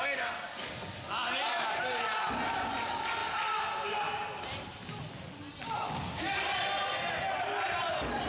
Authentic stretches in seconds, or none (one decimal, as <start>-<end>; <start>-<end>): 0.0-8.3